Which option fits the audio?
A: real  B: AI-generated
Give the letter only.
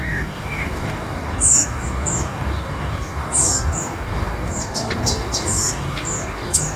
B